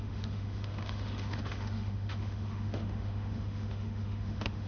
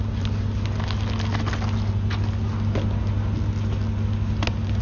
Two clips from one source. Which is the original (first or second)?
second